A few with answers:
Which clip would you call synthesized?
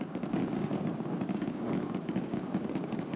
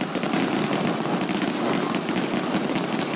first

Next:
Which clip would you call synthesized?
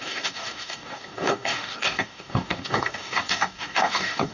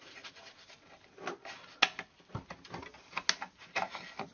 first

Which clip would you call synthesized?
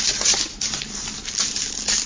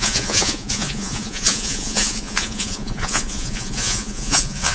second